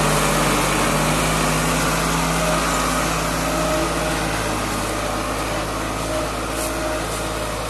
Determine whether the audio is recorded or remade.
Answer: recorded